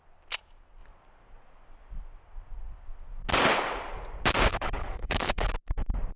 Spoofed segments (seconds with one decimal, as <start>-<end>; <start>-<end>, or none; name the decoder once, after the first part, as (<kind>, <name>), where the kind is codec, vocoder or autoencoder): 4.5-5.5 (codec, HILCodec)